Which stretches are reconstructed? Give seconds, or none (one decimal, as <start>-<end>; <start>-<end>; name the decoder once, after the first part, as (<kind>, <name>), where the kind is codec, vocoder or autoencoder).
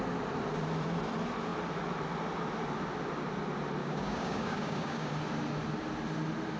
3.8-5.1 (codec, DAC)